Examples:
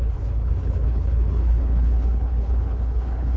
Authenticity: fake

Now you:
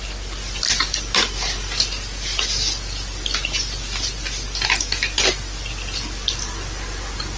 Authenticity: real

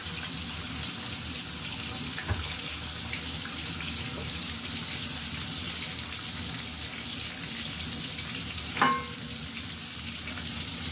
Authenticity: real